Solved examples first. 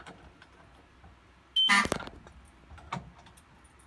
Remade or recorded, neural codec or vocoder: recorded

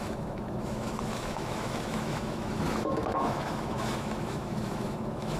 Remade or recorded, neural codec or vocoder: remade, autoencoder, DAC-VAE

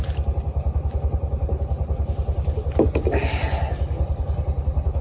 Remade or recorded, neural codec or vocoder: recorded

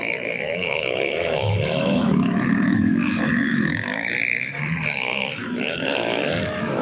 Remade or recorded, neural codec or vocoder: remade, autoencoder, DAC-VAE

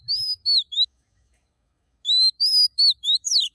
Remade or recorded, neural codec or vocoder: remade, autoencoder, DAC-VAE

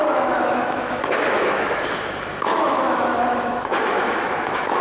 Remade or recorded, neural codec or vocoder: remade, autoencoder, DAC-VAE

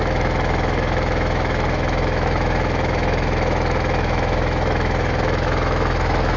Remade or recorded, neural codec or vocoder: remade, autoencoder, DAC-VAE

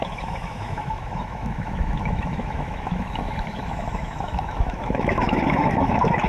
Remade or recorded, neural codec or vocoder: remade, autoencoder, DAC-VAE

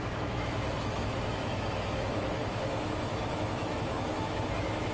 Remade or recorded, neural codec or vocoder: remade, autoencoder, DAC-VAE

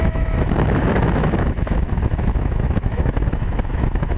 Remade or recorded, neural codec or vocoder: remade, autoencoder, DAC-VAE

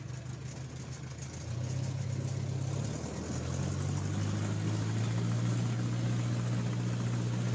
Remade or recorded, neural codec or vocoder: recorded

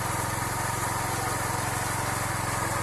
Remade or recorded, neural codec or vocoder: recorded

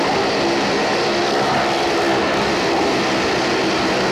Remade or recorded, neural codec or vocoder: recorded